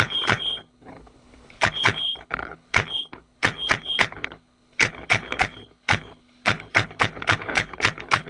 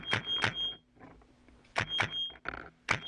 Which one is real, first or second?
second